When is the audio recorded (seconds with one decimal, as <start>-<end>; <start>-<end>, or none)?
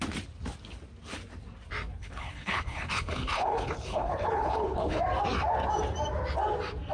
0.0-2.0; 5.0-6.9